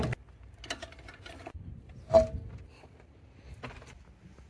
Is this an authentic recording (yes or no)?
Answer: yes